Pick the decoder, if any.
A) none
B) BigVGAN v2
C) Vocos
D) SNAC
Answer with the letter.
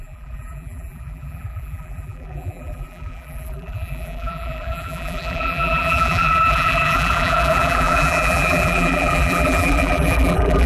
B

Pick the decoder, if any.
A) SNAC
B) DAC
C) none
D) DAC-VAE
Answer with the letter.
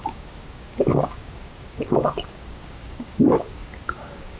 B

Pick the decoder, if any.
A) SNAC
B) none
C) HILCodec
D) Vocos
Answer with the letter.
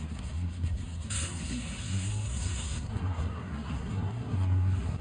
A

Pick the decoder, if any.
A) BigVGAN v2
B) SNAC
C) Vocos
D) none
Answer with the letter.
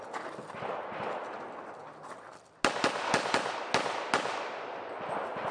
D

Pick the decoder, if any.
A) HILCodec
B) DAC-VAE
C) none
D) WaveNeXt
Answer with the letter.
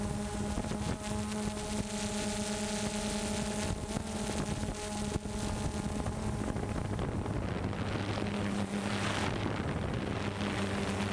C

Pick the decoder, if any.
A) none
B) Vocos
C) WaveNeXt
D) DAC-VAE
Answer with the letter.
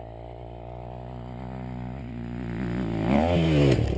A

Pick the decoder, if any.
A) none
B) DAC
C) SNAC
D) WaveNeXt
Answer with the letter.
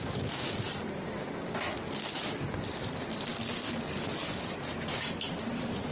A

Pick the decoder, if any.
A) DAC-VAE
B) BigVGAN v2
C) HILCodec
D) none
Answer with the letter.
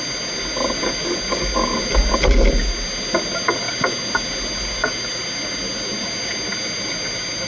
D